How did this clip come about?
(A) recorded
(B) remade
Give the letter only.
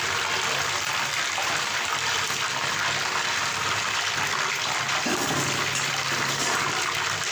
B